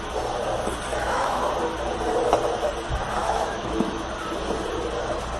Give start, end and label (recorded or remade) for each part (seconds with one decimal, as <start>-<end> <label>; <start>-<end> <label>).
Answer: 0.0-0.9 recorded; 0.9-1.4 remade; 1.4-3.2 recorded; 3.2-4.1 remade; 4.1-5.4 recorded